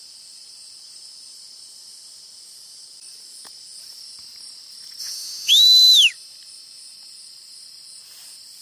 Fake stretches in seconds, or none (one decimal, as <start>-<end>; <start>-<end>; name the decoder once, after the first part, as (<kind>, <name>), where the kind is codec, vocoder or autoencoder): 5.0-5.5 (autoencoder, DAC-VAE)